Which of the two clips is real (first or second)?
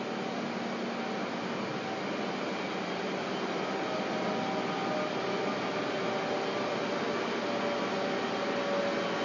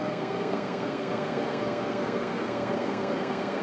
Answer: first